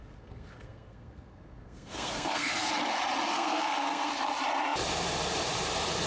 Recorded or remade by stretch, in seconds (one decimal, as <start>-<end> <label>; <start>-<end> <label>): 0.0-2.7 remade; 2.7-3.3 recorded; 3.3-4.1 remade; 4.1-6.1 recorded